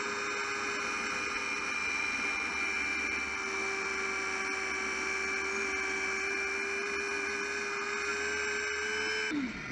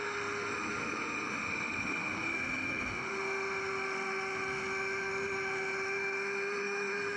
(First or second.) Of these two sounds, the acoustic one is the first